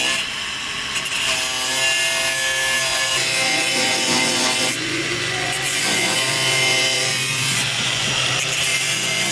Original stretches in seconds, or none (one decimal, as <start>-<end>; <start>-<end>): 0.0-2.9; 8.1-8.7